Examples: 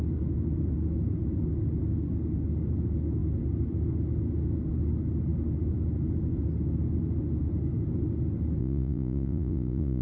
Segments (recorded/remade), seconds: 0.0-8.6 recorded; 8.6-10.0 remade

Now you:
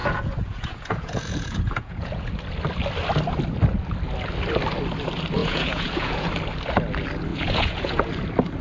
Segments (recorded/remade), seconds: 0.0-2.3 remade; 2.3-5.4 recorded; 5.4-6.3 remade; 6.3-7.3 recorded; 7.3-8.1 remade; 8.1-8.6 recorded